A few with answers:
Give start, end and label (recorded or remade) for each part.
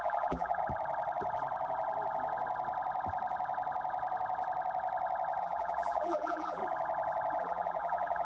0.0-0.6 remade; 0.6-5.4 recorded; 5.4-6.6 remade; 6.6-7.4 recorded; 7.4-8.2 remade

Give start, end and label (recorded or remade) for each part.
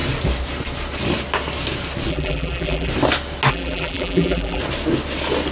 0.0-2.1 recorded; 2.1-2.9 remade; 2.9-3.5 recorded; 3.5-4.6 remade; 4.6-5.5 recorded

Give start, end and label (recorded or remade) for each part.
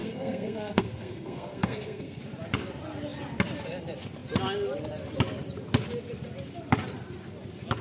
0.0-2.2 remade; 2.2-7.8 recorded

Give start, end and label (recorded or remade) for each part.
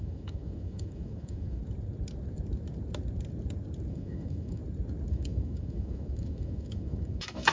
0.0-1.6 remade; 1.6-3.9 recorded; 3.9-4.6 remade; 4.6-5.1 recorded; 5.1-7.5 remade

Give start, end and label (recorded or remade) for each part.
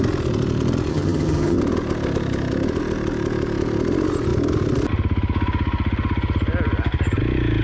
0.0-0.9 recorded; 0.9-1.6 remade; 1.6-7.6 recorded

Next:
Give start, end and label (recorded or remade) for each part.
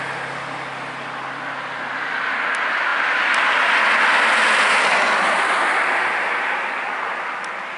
0.0-7.8 recorded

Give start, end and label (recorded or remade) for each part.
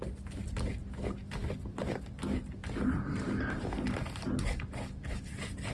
0.0-5.7 recorded